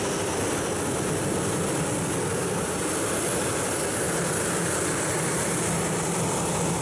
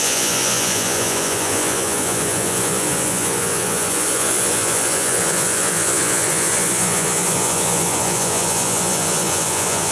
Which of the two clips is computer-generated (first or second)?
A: second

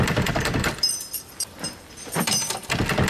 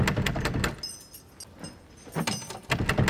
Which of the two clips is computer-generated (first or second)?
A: first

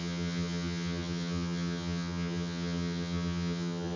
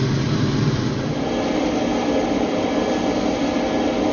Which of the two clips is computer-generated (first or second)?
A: first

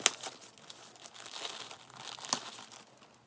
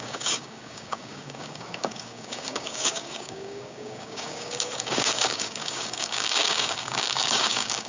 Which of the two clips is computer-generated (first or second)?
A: second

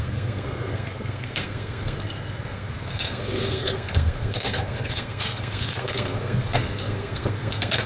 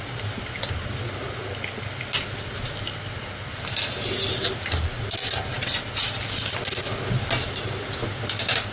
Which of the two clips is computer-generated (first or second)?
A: first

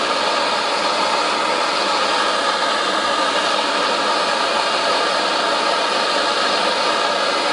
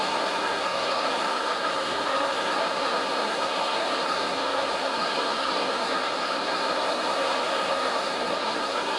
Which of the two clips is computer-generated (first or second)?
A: second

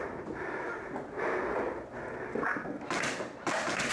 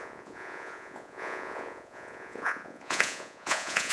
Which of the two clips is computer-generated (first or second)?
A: second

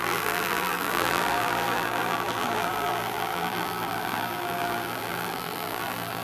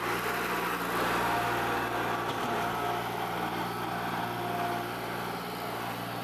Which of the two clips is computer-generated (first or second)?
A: first